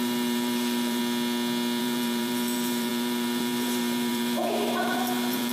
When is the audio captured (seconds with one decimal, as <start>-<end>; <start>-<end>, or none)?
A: 1.0-1.8